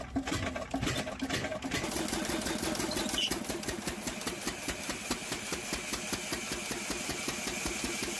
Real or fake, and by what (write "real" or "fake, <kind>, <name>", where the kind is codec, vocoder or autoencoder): real